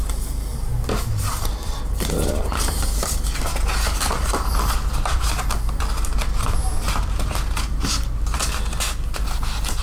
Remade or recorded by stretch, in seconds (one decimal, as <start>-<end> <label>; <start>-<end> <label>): 0.0-0.5 recorded; 0.5-1.7 remade; 1.7-9.8 recorded

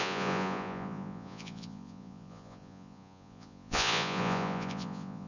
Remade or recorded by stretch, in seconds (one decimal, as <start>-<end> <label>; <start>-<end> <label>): 0.0-5.3 remade

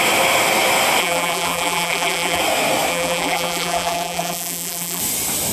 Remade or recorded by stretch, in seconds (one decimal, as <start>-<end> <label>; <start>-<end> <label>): 0.0-1.0 recorded; 1.0-2.4 remade; 2.4-2.9 recorded; 2.9-5.0 remade; 5.0-5.5 recorded

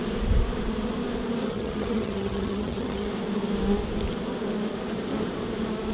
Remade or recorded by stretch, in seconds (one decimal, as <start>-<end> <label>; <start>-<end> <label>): 0.0-1.5 recorded; 1.5-3.1 remade; 3.1-5.9 recorded

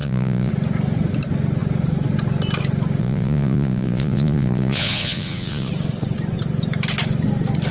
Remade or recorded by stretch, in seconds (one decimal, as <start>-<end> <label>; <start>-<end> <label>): 0.0-0.5 remade; 0.5-3.0 recorded; 3.0-5.7 remade; 5.7-7.7 recorded

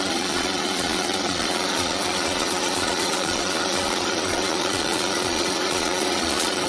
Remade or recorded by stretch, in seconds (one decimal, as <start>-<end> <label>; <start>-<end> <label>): 0.0-6.7 remade